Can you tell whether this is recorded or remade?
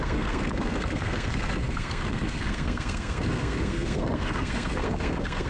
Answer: remade